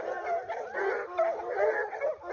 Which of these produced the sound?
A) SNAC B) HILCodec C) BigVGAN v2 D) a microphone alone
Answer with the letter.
C